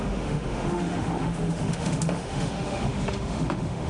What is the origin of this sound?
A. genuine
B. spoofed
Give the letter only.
B